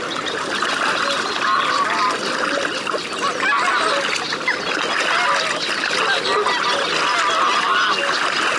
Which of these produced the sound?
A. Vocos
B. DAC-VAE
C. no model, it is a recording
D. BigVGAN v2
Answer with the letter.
C